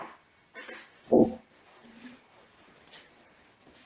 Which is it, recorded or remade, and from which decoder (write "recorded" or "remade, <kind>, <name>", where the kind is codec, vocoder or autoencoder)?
recorded